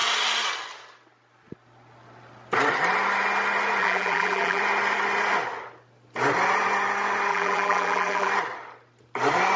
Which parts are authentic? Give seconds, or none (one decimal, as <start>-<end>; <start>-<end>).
0.0-3.8; 4.6-7.3; 8.3-9.6